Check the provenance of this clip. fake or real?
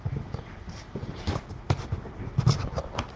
real